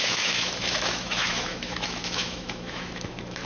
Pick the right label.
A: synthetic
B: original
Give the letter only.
A